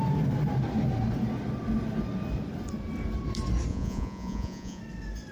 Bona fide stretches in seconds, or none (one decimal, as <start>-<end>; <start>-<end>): 0.0-3.7; 4.8-5.3